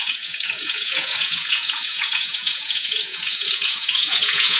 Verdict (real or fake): fake